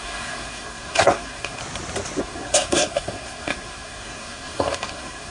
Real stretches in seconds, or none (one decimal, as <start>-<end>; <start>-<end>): 1.6-2.2